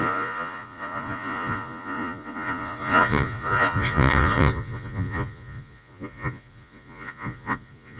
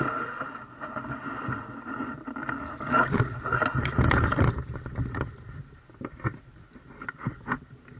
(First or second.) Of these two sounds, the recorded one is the second